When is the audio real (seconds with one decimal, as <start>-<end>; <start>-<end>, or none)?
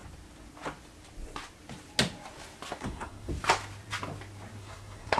0.0-2.8; 3.3-4.6